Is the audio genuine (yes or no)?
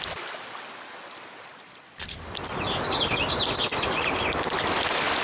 yes